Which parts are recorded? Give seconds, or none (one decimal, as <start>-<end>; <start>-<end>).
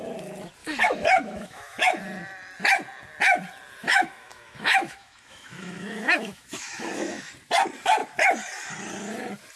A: 0.0-0.6; 2.0-3.8; 7.3-9.6